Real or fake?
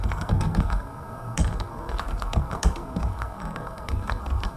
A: fake